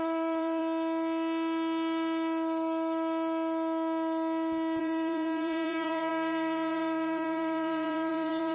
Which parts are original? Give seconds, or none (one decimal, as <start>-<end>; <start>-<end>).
0.6-4.8